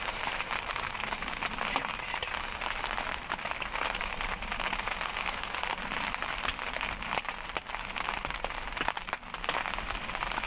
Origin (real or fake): real